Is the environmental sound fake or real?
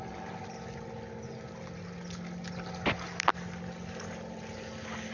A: real